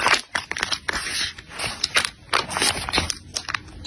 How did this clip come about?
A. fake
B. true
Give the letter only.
B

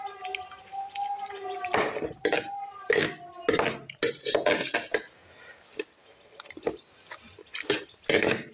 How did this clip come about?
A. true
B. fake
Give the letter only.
A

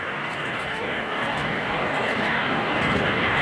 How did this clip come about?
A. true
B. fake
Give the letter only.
B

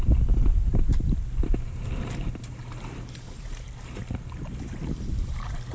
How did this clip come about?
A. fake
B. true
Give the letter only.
B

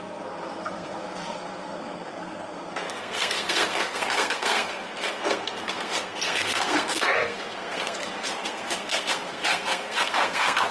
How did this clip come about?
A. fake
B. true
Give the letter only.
A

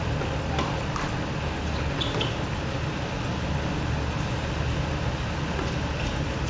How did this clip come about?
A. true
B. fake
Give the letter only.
A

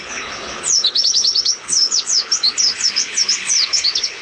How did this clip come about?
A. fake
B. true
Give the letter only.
A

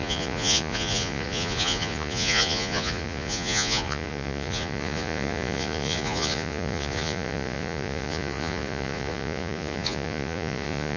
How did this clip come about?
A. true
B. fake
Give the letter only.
B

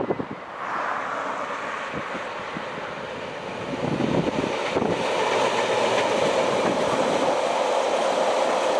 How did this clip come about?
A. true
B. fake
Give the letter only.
A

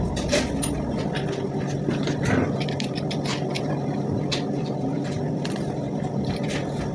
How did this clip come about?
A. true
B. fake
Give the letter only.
A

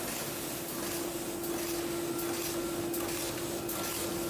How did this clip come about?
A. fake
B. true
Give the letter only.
B